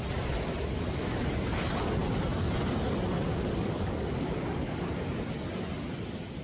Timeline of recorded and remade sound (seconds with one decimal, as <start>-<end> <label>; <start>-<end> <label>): 0.0-3.3 recorded; 3.3-4.9 remade; 4.9-6.4 recorded